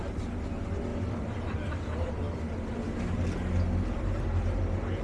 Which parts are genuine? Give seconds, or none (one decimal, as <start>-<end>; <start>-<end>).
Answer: 0.0-5.0